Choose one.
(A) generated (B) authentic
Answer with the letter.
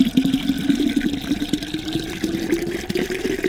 A